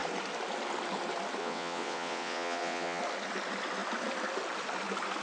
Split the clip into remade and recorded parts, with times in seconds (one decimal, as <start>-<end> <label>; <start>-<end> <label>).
0.0-1.4 recorded; 1.4-3.0 remade; 3.0-5.2 recorded